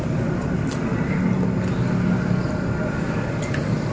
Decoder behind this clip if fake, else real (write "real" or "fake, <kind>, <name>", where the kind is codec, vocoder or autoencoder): real